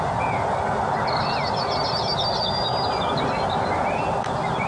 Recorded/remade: recorded